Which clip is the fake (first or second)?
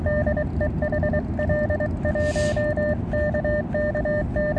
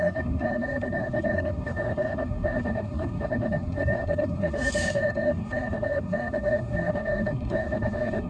second